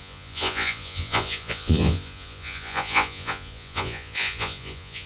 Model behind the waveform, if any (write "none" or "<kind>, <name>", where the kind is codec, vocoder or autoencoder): vocoder, Vocos